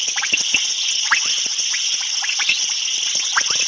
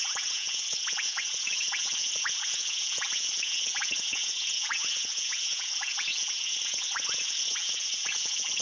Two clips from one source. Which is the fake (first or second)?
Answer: second